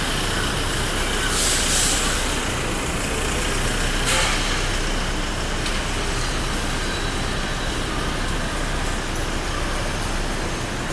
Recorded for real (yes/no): yes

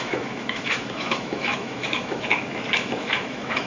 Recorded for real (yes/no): no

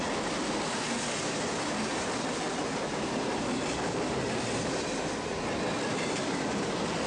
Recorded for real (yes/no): yes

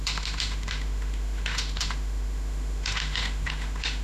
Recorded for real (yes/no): no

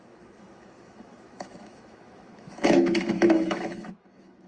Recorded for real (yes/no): no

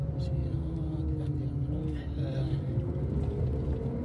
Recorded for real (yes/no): yes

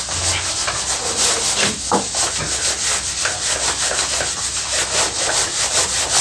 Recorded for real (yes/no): yes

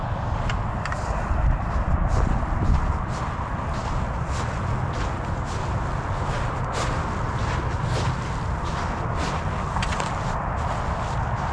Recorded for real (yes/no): yes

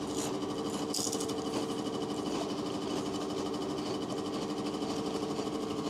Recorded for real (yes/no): yes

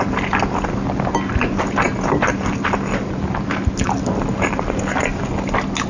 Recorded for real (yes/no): yes